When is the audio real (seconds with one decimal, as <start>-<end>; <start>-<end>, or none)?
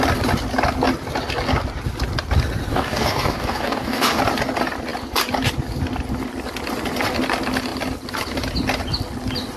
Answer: 0.0-2.7; 4.2-9.6